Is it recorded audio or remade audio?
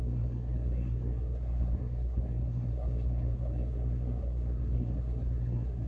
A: remade